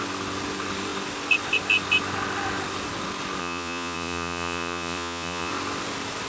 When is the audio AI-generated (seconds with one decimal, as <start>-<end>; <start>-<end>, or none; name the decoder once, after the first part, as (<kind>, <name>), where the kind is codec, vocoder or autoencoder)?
3.4-5.5 (vocoder, Vocos)